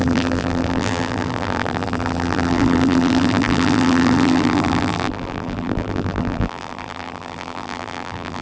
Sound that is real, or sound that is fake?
fake